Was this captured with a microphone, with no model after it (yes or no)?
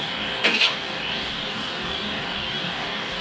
no